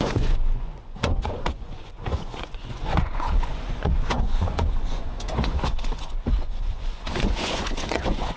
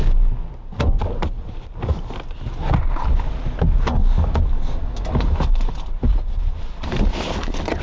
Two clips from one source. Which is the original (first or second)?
second